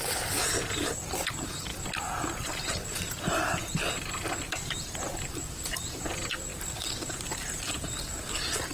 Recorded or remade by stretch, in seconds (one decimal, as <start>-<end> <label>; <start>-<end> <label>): 0.0-8.7 recorded